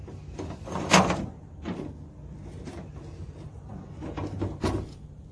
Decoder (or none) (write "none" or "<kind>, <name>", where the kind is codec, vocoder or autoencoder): none